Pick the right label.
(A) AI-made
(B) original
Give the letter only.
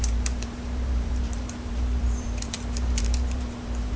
A